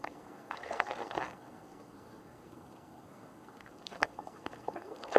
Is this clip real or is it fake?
fake